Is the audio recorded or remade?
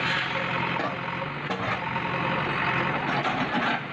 recorded